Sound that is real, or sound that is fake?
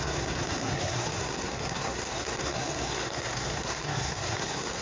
fake